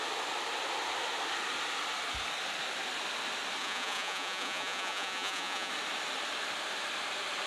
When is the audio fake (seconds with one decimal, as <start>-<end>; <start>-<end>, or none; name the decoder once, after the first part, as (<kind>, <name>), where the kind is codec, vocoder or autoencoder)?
3.6-5.7 (vocoder, Vocos)